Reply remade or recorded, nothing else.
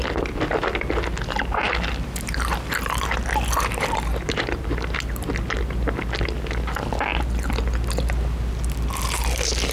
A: recorded